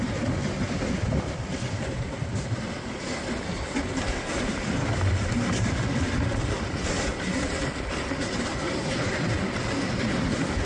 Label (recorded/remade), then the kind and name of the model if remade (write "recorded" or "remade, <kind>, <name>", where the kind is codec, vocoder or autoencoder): remade, vocoder, BigVGAN v2